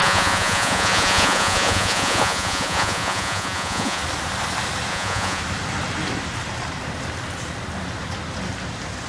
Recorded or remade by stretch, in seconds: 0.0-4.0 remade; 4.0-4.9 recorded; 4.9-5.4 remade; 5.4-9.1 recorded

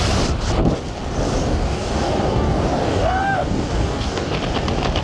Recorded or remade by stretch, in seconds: 0.0-1.4 recorded; 1.4-4.4 remade; 4.4-5.0 recorded

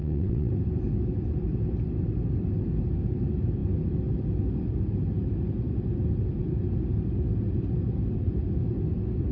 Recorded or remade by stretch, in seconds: 0.0-0.5 remade; 0.5-9.3 recorded

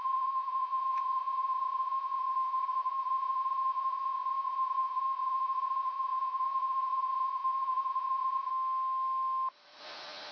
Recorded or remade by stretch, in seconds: 0.0-8.5 remade; 8.5-9.8 recorded; 9.8-10.3 remade

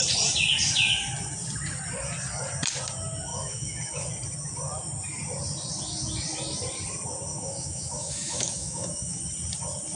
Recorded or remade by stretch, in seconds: 0.0-3.3 recorded; 3.3-4.1 remade; 4.1-7.3 recorded; 7.3-9.2 remade; 9.2-10.0 recorded

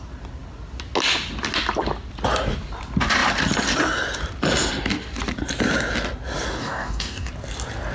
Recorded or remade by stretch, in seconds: 0.0-6.6 recorded; 6.6-7.3 remade; 7.3-7.9 recorded

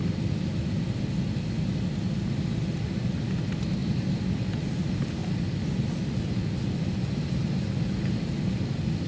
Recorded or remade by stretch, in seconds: 0.0-9.1 recorded

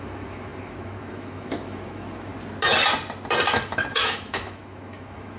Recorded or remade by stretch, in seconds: 0.0-2.3 remade; 2.3-3.5 recorded; 3.5-5.4 remade